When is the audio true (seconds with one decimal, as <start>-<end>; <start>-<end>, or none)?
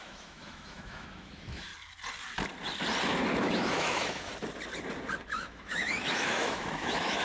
1.7-3.4; 4.3-5.2